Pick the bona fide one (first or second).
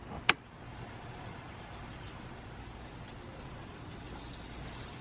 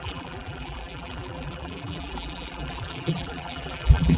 first